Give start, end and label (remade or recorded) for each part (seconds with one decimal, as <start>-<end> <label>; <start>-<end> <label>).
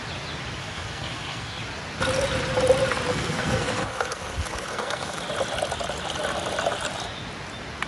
0.0-0.6 recorded; 0.6-1.6 remade; 1.6-3.1 recorded; 3.1-5.2 remade; 5.2-7.9 recorded